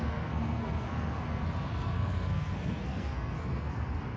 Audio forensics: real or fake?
fake